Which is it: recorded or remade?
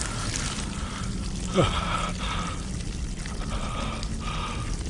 recorded